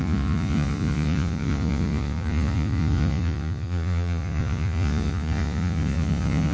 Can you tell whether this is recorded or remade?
remade